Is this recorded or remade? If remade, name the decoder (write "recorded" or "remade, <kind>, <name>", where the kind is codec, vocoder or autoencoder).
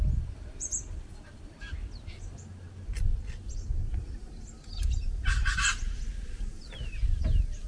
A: recorded